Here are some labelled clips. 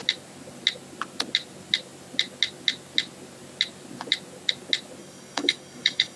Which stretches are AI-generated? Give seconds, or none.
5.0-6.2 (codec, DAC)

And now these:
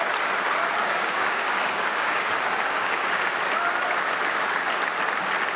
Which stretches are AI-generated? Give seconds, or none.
0.8-3.3 (codec, DAC)

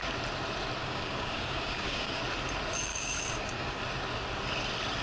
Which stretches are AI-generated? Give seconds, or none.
0.8-2.2 (codec, DAC); 2.9-3.8

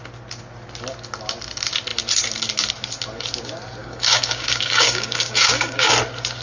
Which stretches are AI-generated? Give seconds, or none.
3.8-5.9 (codec, DAC)

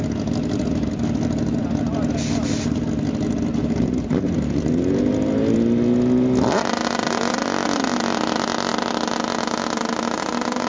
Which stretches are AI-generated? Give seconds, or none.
none

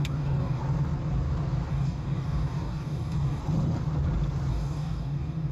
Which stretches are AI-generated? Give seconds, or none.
0.0-0.6 (codec, DAC); 1.7-3.4; 4.5-5.5

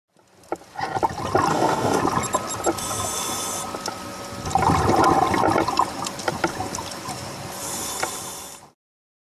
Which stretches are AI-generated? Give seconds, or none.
1.5-2.0 (codec, DAC)